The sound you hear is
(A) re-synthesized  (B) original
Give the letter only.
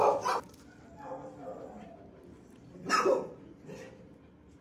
B